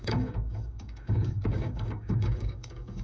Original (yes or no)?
no